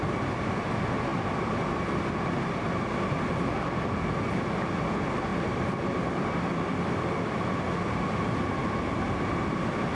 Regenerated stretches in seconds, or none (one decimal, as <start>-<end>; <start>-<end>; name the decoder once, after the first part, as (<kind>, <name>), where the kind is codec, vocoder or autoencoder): 1.1-2.1 (vocoder, BigVGAN v2); 5.3-8.1